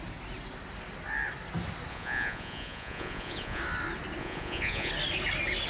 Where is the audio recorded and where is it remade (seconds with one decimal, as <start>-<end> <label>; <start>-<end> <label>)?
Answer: 0.0-1.9 recorded; 1.9-3.6 remade; 3.6-4.2 recorded; 4.2-4.9 remade; 4.9-5.7 recorded